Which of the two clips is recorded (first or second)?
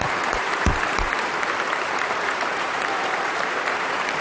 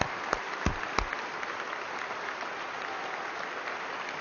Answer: second